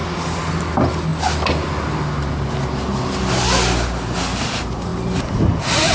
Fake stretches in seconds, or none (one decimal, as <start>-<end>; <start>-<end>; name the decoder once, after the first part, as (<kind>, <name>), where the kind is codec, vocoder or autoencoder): none